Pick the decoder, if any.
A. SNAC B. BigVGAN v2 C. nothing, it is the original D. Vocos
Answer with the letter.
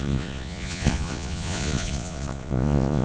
D